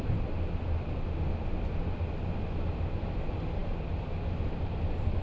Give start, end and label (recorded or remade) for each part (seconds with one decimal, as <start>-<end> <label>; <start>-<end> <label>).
0.0-5.2 recorded